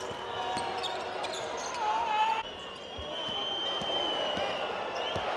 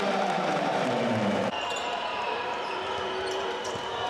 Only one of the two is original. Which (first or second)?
first